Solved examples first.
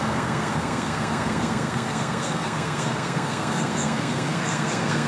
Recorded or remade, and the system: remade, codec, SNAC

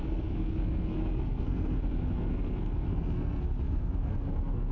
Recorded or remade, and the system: remade, codec, SNAC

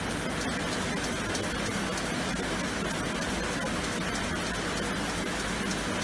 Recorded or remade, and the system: recorded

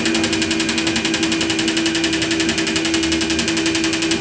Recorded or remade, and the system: recorded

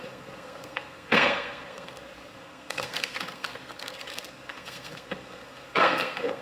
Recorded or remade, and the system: remade, codec, SNAC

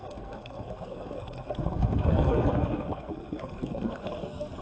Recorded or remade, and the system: remade, codec, SNAC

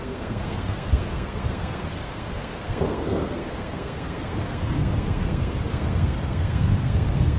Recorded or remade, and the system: remade, codec, SNAC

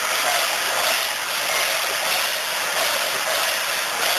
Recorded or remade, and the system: recorded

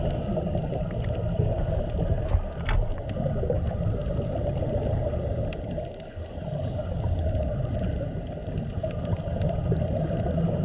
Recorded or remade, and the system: recorded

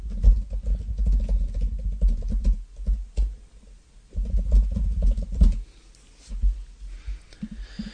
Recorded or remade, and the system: recorded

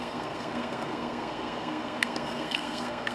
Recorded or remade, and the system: remade, codec, SNAC